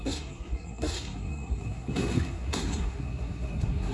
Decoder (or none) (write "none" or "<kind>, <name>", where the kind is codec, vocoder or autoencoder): codec, SNAC